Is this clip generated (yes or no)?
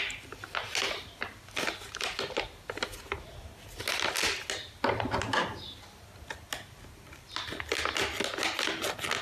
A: no